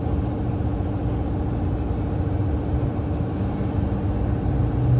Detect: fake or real real